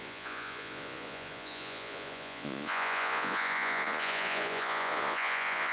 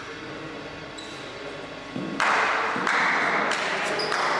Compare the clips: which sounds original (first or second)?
second